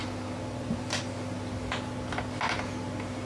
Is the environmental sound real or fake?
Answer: real